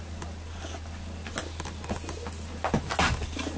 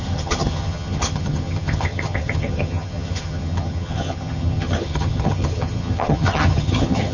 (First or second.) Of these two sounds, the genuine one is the first